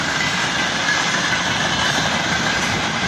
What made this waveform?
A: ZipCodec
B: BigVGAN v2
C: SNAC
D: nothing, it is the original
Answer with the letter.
B